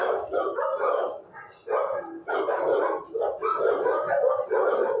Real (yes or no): yes